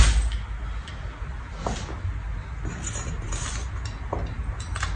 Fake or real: real